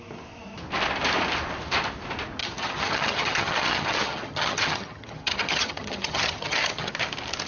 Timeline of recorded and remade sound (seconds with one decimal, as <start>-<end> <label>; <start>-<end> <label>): 0.0-2.4 recorded; 2.4-6.9 remade; 6.9-7.5 recorded